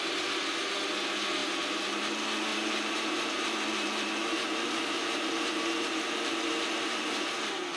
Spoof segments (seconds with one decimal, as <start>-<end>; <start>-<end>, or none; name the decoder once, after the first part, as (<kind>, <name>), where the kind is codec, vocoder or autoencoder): 1.4-2.1 (vocoder, BigVGAN v2); 2.5-7.2